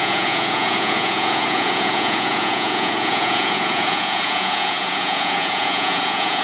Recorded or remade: remade